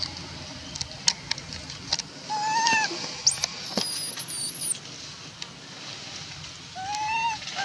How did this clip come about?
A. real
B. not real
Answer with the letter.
A